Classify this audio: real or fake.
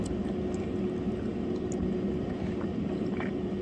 real